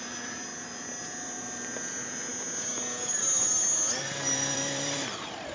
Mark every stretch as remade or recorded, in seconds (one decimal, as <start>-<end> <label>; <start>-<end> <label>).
0.0-0.5 remade; 0.5-1.0 recorded; 1.0-2.3 remade; 2.3-3.2 recorded; 3.2-5.5 remade